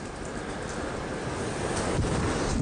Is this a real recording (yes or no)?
yes